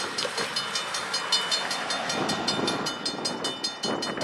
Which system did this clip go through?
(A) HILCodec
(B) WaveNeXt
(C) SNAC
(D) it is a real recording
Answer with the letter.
D